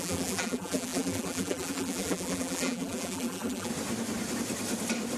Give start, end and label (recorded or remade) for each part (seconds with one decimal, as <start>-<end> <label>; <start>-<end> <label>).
0.0-3.7 remade; 3.7-5.2 recorded